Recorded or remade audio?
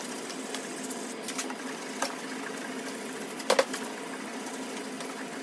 recorded